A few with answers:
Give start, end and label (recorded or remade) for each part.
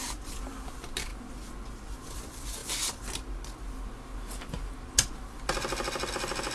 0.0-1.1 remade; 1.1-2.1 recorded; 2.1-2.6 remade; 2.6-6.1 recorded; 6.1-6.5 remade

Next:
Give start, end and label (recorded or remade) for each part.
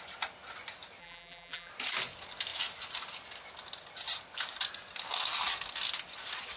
0.0-1.0 recorded; 1.0-1.7 remade; 1.7-6.6 recorded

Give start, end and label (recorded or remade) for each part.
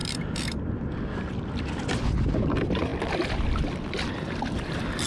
0.0-0.8 remade; 0.8-2.9 recorded; 2.9-4.1 remade; 4.1-5.1 recorded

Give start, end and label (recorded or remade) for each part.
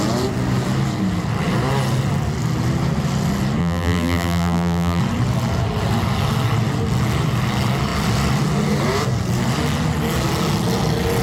0.0-3.6 recorded; 3.6-5.0 remade; 5.0-11.2 recorded